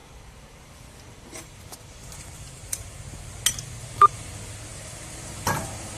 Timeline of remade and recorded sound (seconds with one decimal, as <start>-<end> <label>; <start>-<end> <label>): 0.0-3.0 remade; 3.0-3.8 recorded; 3.8-4.3 remade; 4.3-4.7 recorded; 4.7-6.0 remade